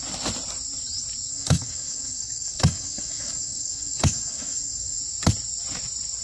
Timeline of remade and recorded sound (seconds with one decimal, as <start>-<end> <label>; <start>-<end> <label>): 0.0-1.3 recorded; 1.3-5.0 remade; 5.0-6.2 recorded